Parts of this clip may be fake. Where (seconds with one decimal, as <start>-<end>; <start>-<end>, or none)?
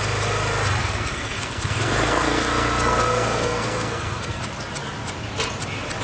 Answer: 0.8-4.4